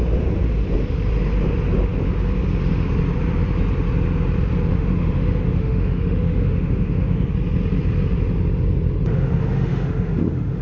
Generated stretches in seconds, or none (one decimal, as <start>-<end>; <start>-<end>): 4.7-7.3; 9.1-10.6